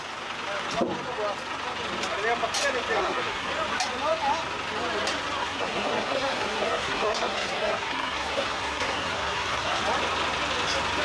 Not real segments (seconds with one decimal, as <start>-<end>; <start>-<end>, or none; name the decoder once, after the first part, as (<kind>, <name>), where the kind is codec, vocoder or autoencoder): 3.0-3.5 (codec, SNAC); 5.4-9.8